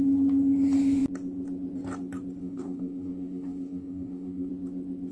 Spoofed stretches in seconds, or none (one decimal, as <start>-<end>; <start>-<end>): 2.4-4.5